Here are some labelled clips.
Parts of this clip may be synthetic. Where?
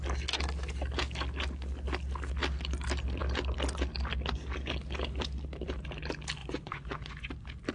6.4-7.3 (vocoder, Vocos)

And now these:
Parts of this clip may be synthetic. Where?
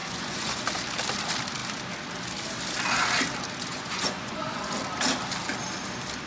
0.0-0.6 (vocoder, Vocos); 3.7-4.7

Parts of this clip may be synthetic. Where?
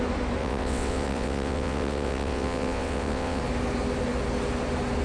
0.4-3.4 (vocoder, WaveNeXt)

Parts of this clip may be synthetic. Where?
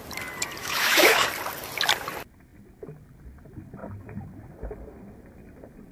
0.6-1.2 (autoencoder, DAC-VAE)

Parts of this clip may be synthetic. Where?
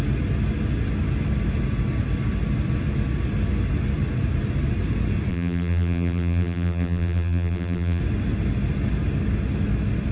5.3-8.0 (vocoder, BigVGAN v2)